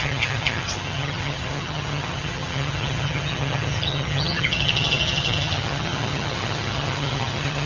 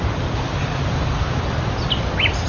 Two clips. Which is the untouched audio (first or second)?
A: second